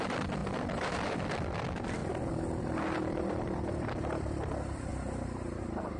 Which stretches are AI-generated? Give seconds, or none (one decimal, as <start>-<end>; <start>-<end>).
0.0-2.0; 2.6-4.9; 5.6-6.0